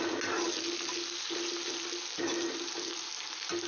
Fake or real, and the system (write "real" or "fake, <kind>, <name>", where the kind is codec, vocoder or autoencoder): real